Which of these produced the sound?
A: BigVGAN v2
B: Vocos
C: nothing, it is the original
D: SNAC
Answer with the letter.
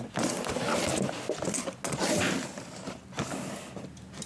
C